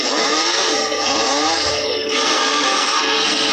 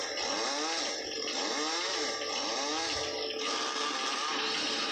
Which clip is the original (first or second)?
second